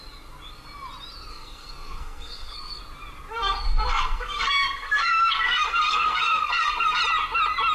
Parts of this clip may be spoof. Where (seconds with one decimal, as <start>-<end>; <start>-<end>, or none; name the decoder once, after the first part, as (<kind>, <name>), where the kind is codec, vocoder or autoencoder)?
1.3-2.8 (codec, SNAC); 3.3-7.0

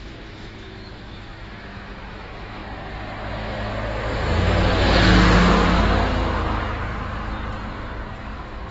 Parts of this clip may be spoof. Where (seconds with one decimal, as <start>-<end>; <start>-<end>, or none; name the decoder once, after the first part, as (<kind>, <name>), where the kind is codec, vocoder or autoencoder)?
0.0-2.6 (autoencoder, DAC-VAE); 3.3-3.7; 8.2-8.7

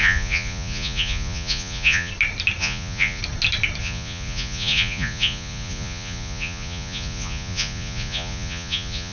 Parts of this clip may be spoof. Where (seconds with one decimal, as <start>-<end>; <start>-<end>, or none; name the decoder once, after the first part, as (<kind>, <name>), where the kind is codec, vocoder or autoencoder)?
0.0-2.1 (vocoder, Vocos); 2.6-3.2; 3.8-9.1

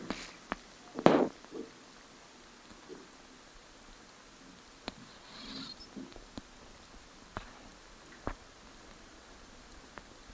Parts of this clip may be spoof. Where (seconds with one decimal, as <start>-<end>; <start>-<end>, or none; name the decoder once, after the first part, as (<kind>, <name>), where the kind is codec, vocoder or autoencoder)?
none